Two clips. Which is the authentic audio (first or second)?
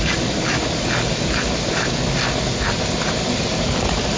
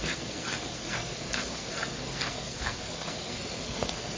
first